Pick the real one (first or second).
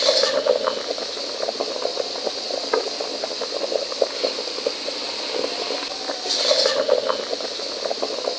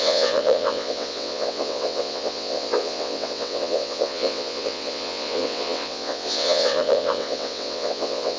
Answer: first